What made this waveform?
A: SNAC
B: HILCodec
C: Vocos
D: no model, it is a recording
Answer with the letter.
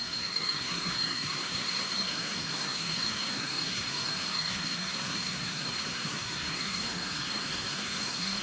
A